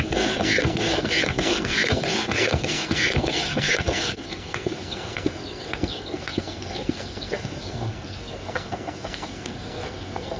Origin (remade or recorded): remade